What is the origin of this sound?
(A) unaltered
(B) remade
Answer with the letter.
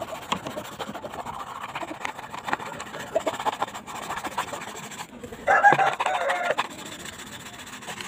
A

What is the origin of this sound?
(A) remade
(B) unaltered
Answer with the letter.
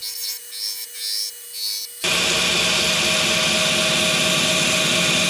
B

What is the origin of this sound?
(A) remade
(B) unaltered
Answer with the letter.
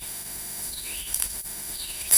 A